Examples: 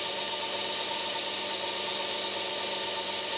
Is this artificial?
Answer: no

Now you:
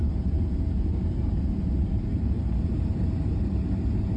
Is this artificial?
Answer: yes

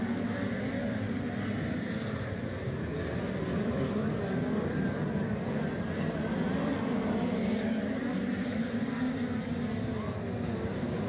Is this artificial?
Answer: no